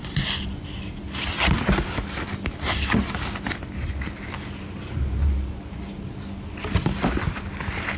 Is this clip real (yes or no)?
yes